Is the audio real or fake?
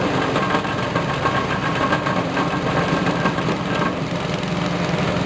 real